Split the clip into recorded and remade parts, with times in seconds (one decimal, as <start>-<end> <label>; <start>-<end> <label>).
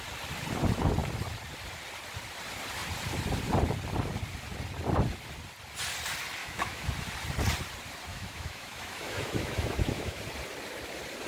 0.0-6.4 recorded; 6.4-6.9 remade; 6.9-8.1 recorded; 8.1-10.2 remade; 10.2-11.3 recorded